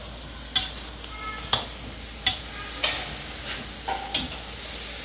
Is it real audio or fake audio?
real